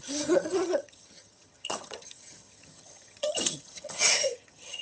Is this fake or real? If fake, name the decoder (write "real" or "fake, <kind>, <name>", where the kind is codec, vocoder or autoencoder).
fake, vocoder, HiFi-GAN